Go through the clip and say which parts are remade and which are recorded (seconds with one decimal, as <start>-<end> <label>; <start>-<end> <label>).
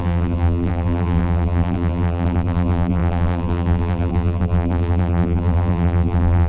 0.0-6.5 remade